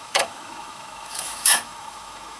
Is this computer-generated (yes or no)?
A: yes